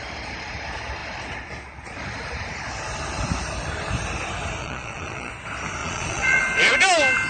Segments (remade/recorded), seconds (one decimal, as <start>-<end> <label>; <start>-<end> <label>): 0.0-4.6 recorded; 4.6-5.3 remade; 5.3-5.8 recorded; 5.8-6.4 remade; 6.4-7.3 recorded